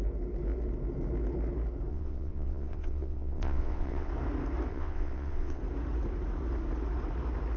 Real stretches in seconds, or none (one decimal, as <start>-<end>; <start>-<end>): 0.0-1.9; 4.1-4.7; 5.6-7.6